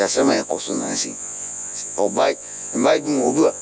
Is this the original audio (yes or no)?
no